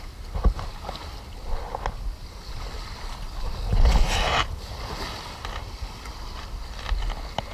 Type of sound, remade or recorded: recorded